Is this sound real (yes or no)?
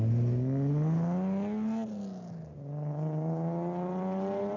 yes